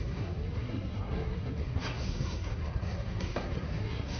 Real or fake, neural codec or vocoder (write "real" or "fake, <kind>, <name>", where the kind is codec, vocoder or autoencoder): fake, codec, SNAC